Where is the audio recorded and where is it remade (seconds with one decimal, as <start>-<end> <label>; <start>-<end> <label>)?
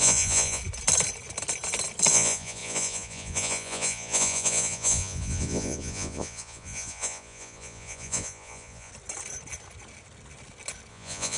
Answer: 0.0-0.6 remade; 0.6-2.1 recorded; 2.1-8.9 remade; 8.9-10.9 recorded; 10.9-11.4 remade